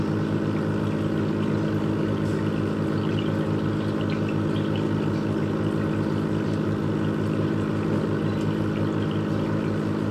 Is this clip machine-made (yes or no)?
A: yes